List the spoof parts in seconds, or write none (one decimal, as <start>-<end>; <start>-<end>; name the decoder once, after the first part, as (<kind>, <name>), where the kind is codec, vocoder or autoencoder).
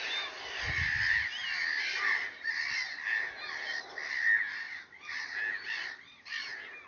none